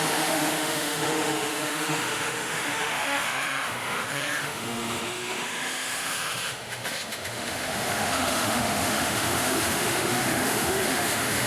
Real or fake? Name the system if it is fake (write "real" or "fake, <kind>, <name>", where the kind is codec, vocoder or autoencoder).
fake, autoencoder, DAC-VAE